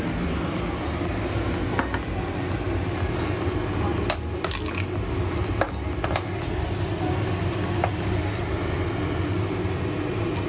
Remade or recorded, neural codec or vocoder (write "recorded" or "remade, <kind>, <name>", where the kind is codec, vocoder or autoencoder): recorded